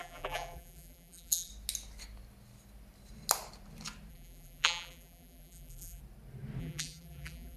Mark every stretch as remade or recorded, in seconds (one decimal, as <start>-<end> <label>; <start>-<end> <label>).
0.0-1.5 remade; 1.5-4.1 recorded; 4.1-6.0 remade; 6.0-6.6 recorded; 6.6-7.6 remade